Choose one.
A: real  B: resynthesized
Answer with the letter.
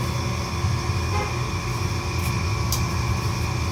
A